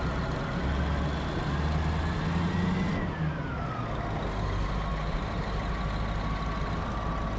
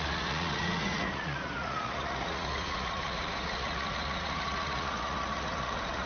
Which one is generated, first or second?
second